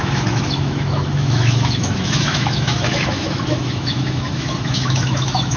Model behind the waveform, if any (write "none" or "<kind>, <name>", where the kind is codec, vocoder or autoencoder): autoencoder, DAC-VAE